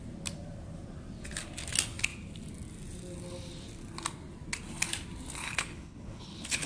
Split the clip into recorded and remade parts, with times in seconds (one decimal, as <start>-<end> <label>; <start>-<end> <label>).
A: 0.0-5.4 recorded; 5.4-6.7 remade